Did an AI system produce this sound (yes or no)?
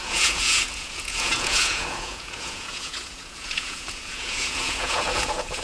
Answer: yes